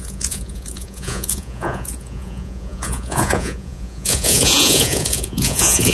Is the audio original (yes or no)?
no